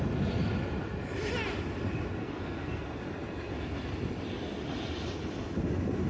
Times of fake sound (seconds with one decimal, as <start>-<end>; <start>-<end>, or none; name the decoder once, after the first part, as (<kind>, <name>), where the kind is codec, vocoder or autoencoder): 2.2-2.8 (codec, SNAC)